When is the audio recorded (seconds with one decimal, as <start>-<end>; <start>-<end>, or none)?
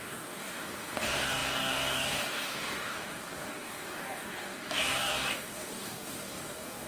none